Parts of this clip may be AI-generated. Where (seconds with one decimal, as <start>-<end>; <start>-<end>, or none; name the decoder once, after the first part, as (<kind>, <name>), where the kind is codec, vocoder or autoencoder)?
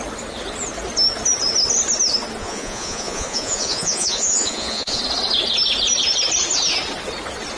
2.4-5.0 (vocoder, Vocos)